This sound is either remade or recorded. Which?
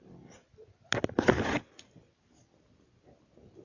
recorded